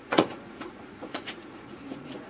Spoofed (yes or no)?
yes